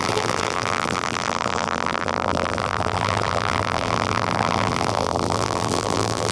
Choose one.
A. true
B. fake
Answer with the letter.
B